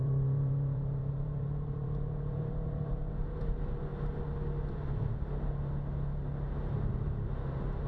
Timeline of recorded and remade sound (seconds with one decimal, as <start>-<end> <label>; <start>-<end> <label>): 0.0-3.9 remade; 3.9-6.9 recorded; 6.9-7.9 remade